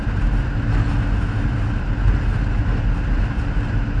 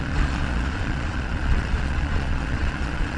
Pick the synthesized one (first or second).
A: second